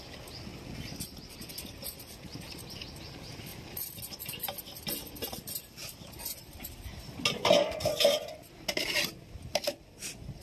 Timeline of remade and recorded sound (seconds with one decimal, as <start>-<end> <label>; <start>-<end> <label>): 0.0-10.4 recorded